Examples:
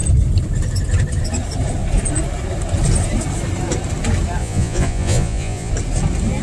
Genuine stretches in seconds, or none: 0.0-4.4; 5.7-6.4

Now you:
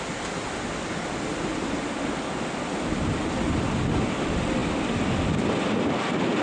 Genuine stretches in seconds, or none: 0.0-6.4

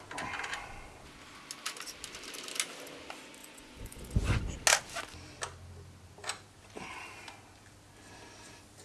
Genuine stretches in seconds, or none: 0.0-3.4; 4.4-8.8

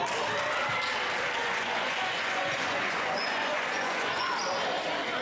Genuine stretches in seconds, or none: 0.0-1.4; 4.3-5.2

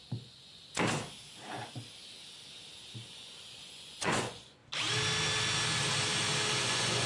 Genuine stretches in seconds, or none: 0.6-3.1; 4.6-6.6

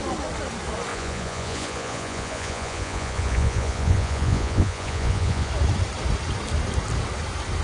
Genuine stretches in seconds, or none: 0.0-0.9; 5.5-7.6